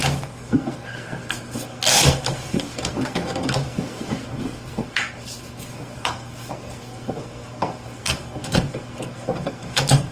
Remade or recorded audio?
remade